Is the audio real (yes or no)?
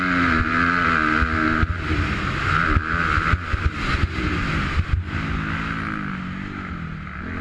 yes